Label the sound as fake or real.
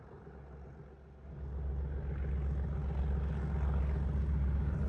real